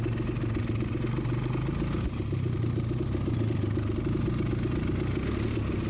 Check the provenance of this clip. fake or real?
real